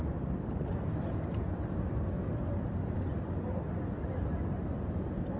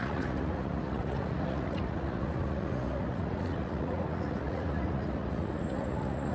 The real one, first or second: first